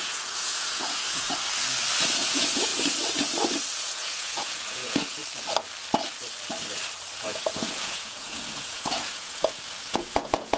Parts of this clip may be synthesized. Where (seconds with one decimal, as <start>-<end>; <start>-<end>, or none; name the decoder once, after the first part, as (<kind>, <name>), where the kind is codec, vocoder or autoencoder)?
0.0-1.3 (vocoder, Vocos); 2.2-2.7; 3.8-5.2; 7.2-10.6